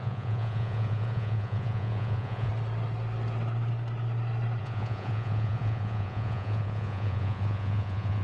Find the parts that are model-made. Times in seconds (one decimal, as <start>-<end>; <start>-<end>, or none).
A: 0.0-2.5; 4.6-8.2